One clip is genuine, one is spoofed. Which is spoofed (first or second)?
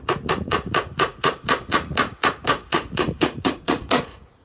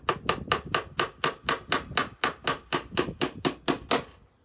first